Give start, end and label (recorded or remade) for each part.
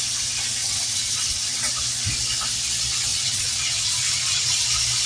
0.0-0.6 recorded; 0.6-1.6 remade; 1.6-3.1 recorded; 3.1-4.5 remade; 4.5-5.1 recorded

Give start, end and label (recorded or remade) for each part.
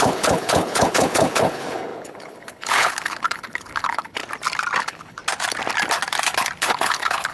0.0-4.2 remade; 4.2-4.8 recorded; 4.8-5.2 remade; 5.2-6.6 recorded; 6.6-7.3 remade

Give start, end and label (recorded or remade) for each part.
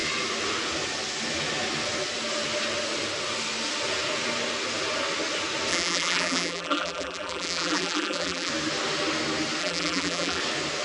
0.0-5.7 recorded; 5.7-8.5 remade; 8.5-9.6 recorded; 9.6-10.4 remade; 10.4-10.8 recorded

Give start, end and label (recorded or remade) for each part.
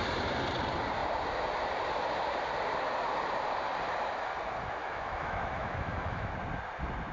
0.0-4.8 recorded; 4.8-6.3 remade; 6.3-7.1 recorded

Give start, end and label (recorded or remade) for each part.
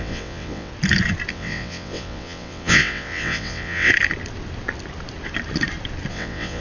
0.0-0.7 remade; 0.7-1.3 recorded; 1.3-3.9 remade; 3.9-6.1 recorded; 6.1-6.6 remade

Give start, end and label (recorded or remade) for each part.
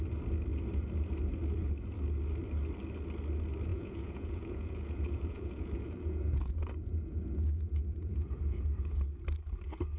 0.0-3.7 recorded; 3.7-8.3 remade; 8.3-10.0 recorded